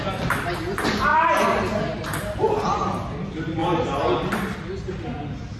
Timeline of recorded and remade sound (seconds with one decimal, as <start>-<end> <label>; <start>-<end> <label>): 0.0-5.6 recorded